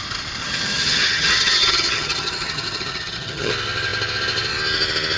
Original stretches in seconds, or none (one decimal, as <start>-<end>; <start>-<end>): 0.0-0.4; 3.5-5.2